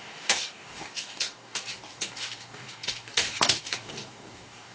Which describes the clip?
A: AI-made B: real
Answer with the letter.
A